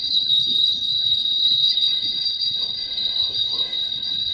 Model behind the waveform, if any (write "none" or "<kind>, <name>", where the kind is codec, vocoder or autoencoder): codec, HILCodec